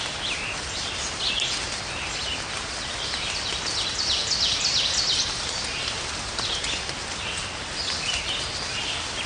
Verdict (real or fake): real